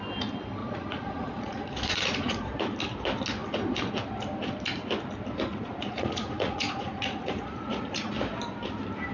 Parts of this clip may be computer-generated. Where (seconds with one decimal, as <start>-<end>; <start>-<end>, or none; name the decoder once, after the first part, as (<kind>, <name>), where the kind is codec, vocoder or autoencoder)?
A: 0.6-2.6 (vocoder, Vocos); 5.5-8.1